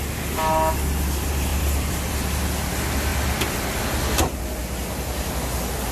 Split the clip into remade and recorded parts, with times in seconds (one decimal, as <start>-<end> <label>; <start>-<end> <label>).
0.0-1.5 recorded; 1.5-2.4 remade; 2.4-5.9 recorded